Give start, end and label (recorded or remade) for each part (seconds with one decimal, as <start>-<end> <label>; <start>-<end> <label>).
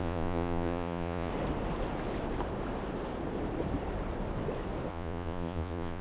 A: 0.0-1.3 remade; 1.3-4.9 recorded; 4.9-6.0 remade